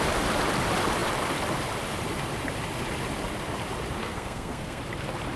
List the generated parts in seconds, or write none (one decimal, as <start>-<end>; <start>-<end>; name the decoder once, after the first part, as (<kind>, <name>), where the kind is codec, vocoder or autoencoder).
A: 4.0-4.8 (codec, SNAC)